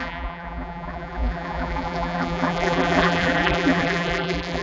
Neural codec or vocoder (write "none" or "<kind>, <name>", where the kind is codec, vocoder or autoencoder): vocoder, BigVGAN v2